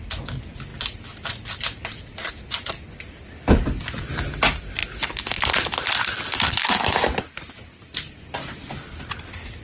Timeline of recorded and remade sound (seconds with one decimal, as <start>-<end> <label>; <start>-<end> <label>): 0.0-9.6 recorded